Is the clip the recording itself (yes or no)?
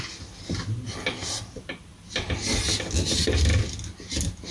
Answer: yes